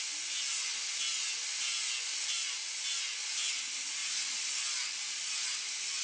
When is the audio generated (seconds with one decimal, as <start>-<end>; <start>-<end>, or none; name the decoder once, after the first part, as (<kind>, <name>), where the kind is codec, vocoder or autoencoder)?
none